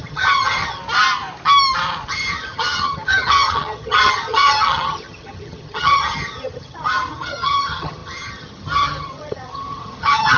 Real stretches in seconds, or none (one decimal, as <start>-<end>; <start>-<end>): 0.8-2.1